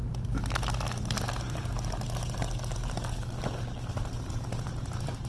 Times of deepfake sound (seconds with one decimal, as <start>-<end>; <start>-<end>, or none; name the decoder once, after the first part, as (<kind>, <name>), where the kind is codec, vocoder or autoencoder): none